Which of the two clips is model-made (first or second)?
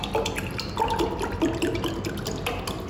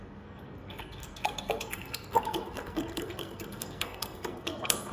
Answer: second